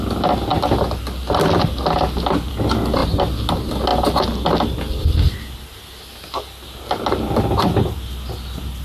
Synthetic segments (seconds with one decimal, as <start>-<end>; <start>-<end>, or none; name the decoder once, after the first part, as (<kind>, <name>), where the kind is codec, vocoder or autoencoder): none